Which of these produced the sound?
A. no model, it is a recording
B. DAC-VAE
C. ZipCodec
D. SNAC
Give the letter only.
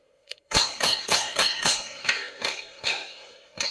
D